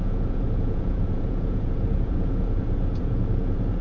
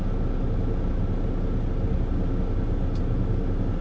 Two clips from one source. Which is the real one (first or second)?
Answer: second